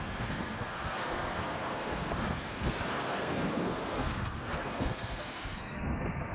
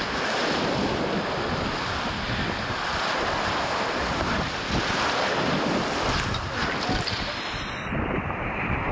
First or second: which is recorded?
second